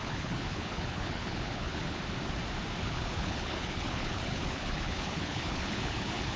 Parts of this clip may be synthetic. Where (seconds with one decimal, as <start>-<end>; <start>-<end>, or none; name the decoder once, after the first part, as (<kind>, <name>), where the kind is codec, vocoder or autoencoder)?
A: 0.0-2.0 (codec, HILCodec); 2.8-6.4